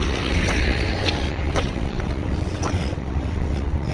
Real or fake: fake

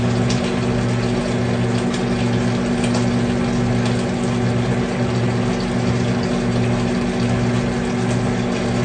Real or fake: real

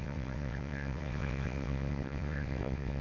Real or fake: fake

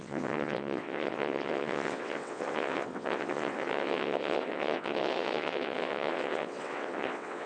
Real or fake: fake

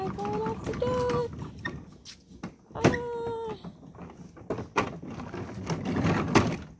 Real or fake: real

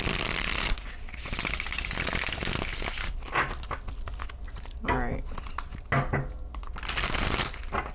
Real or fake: real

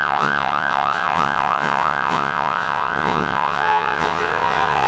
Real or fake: fake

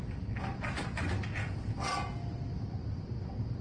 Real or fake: real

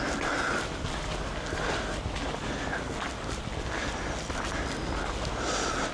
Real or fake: real